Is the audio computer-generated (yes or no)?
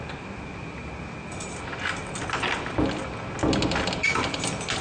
no